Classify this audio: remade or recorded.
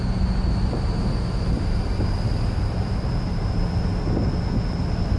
recorded